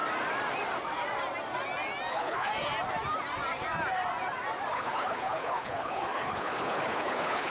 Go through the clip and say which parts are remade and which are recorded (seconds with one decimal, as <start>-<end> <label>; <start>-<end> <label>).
0.0-2.1 recorded; 2.1-2.5 remade; 2.5-4.7 recorded; 4.7-7.5 remade